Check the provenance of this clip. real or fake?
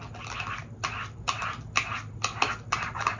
real